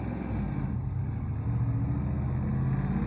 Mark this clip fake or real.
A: real